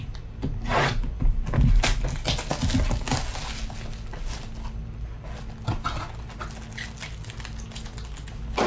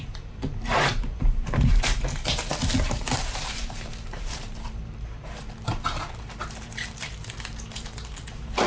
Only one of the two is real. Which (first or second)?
first